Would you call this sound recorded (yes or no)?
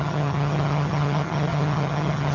no